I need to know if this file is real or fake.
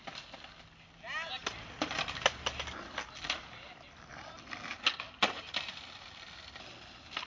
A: real